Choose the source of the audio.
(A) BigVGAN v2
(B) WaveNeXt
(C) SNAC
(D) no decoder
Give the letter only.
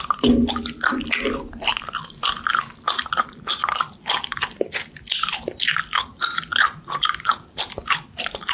D